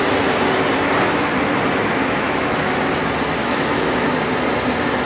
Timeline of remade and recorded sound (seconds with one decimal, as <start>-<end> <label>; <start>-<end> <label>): 0.0-2.0 recorded; 2.0-2.7 remade; 2.7-3.4 recorded; 3.4-4.1 remade; 4.1-5.1 recorded